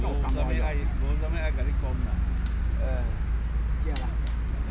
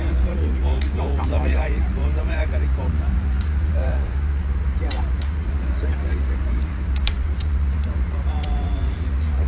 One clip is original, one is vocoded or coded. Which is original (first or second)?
first